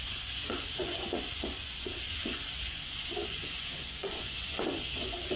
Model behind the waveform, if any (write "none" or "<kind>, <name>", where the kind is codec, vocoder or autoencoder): vocoder, Vocos